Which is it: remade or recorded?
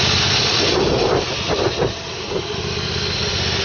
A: recorded